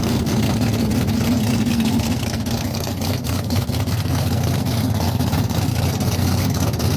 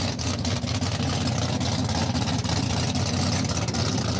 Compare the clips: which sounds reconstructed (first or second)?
first